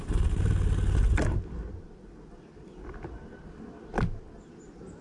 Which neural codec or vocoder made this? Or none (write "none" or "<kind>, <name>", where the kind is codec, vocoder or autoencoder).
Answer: none